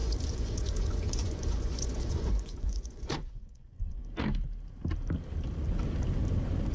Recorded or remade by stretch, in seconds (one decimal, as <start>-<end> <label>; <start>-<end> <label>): 0.0-4.0 remade; 4.0-6.7 recorded